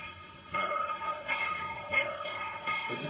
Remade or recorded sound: remade